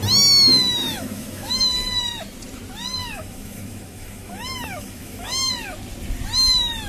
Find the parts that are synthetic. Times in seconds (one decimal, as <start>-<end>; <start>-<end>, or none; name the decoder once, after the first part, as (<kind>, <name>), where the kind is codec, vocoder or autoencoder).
0.8-1.6 (autoencoder, DAC-VAE); 3.0-5.5